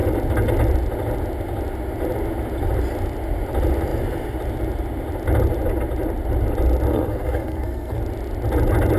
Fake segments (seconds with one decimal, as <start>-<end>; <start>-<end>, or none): 6.9-8.0